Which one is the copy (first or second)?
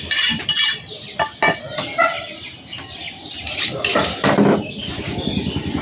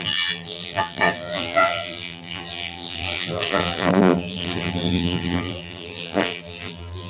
second